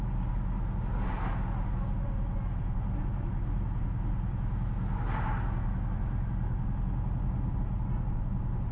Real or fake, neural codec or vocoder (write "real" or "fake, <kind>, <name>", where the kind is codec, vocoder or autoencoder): real